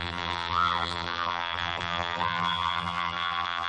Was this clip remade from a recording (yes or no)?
yes